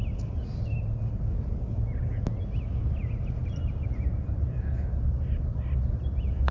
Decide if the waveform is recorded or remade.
recorded